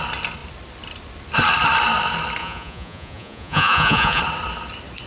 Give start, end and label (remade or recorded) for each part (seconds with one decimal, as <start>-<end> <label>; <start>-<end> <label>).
0.0-2.4 recorded; 2.4-4.2 remade; 4.2-5.1 recorded